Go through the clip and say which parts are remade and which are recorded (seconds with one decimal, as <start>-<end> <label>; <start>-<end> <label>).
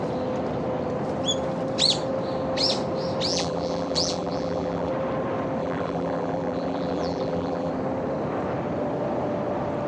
0.0-3.3 recorded; 3.3-4.9 remade; 4.9-5.6 recorded; 5.6-7.7 remade; 7.7-9.9 recorded